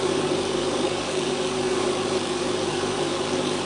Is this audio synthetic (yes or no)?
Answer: yes